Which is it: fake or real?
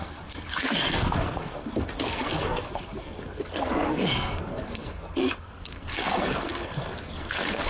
fake